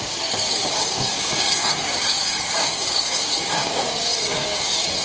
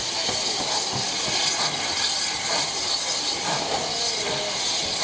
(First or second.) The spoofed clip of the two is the first